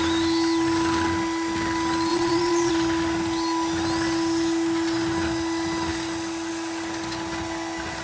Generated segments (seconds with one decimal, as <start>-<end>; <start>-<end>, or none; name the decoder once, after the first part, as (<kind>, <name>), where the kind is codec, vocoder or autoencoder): 2.1-2.7 (vocoder, Vocos)